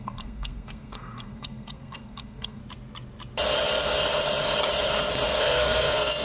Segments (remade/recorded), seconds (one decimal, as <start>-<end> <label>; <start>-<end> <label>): 0.0-2.6 remade; 2.6-5.4 recorded; 5.4-6.2 remade